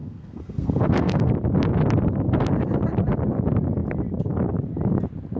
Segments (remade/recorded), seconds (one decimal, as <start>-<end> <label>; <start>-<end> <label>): 0.0-1.3 remade; 1.3-5.4 recorded